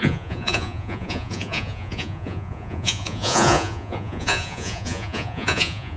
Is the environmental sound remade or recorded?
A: remade